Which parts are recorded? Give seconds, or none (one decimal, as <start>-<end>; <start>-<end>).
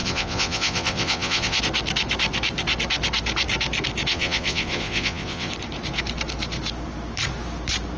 1.6-4.1; 5.5-8.0